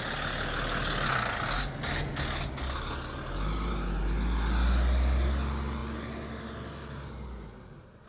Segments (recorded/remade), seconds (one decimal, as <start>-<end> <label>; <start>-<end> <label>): 0.0-8.1 recorded